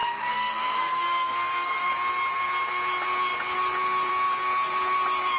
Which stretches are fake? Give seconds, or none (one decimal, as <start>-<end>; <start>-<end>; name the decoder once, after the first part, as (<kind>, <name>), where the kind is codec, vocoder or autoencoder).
0.0-1.9 (codec, SNAC)